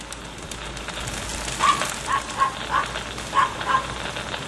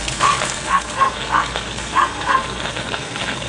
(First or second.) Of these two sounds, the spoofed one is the second